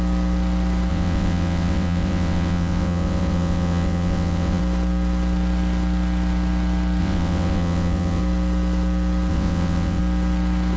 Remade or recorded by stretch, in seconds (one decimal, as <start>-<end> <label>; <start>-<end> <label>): 0.0-0.9 recorded; 0.9-4.6 remade; 4.6-7.0 recorded; 7.0-8.2 remade; 8.2-9.3 recorded; 9.3-10.0 remade; 10.0-10.8 recorded